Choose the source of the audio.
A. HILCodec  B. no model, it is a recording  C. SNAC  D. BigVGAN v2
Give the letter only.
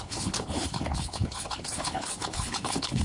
A